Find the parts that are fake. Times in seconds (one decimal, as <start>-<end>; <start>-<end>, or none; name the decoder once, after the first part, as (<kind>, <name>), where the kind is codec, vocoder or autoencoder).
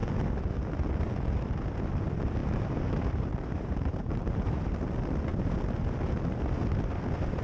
2.4-4.8 (vocoder, BigVGAN v2)